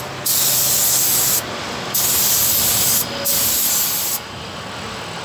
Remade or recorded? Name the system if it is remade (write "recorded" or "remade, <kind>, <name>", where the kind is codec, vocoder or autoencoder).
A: recorded